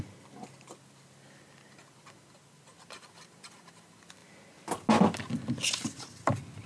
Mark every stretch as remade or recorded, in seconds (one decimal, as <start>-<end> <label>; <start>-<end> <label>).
0.0-6.7 recorded